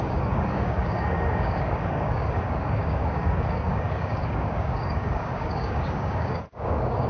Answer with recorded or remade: remade